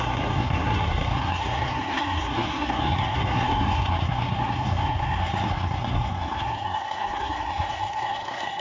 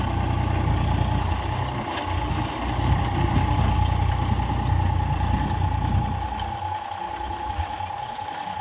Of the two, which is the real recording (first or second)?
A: second